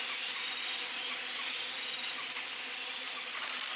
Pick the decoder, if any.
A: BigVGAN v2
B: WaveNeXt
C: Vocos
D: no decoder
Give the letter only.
D